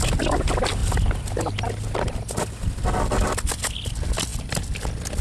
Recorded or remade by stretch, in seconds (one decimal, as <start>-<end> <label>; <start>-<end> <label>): 0.0-5.2 recorded